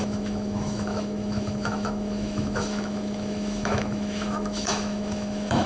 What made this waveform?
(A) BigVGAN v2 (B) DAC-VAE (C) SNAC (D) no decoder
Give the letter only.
B